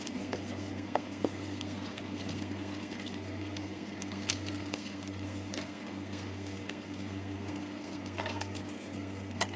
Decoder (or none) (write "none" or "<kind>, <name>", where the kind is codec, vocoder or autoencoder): codec, SNAC